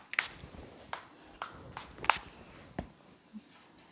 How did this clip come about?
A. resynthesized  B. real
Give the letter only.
B